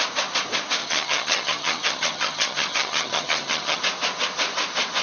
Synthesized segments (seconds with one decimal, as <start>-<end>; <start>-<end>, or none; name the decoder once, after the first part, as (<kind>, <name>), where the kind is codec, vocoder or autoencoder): 0.8-3.8 (vocoder, HiFi-GAN)